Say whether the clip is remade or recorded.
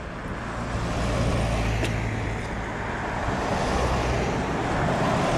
recorded